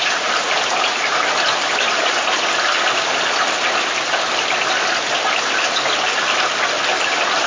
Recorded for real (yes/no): yes